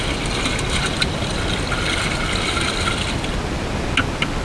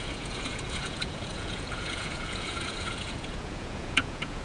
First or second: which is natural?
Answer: first